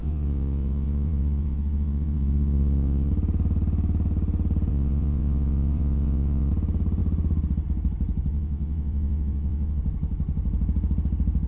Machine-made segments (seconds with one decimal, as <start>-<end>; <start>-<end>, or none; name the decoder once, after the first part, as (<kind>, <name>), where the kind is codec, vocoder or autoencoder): 0.0-3.1 (vocoder, WaveNeXt); 4.7-6.5; 8.3-9.8